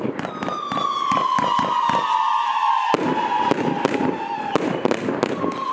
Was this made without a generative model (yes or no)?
yes